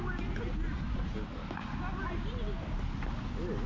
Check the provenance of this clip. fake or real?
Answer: real